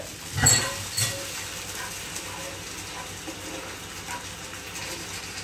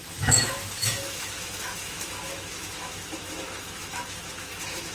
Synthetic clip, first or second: second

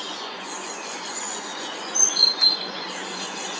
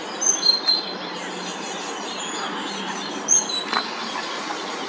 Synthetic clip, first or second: first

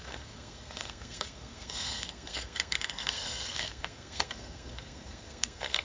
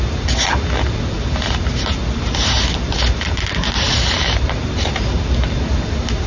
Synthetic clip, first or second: first